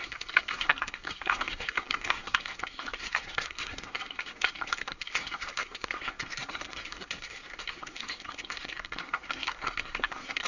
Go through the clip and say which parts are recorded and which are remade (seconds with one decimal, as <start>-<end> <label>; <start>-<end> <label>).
0.0-10.5 remade